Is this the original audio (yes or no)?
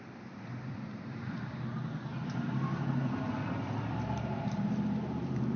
no